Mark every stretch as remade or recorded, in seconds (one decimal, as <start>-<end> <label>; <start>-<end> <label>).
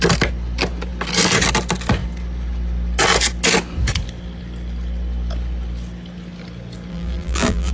0.0-6.9 recorded; 6.9-7.7 remade